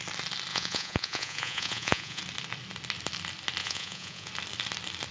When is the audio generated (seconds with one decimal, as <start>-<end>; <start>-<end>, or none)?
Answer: 0.5-2.2; 3.6-4.3

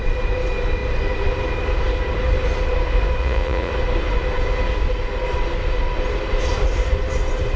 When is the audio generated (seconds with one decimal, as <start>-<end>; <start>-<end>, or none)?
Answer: 3.2-3.7

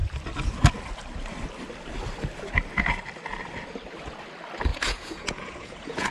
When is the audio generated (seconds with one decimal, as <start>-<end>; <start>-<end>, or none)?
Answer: 4.7-6.1

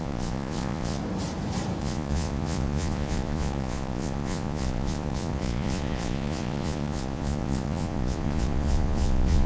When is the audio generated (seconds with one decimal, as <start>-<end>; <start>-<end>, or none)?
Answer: 0.0-1.0; 1.8-9.5

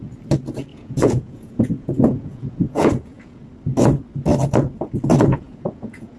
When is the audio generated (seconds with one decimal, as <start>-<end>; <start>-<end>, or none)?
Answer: 0.7-3.4; 5.3-6.2

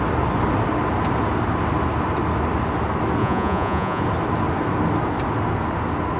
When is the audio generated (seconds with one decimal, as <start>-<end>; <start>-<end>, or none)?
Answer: 3.2-4.0